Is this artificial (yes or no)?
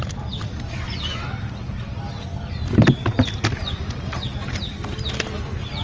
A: no